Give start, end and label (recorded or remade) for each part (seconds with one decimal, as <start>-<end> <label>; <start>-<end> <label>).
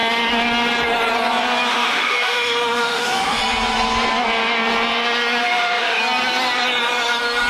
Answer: 0.0-1.7 recorded; 1.7-3.4 remade; 3.4-5.4 recorded; 5.4-6.0 remade; 6.0-7.5 recorded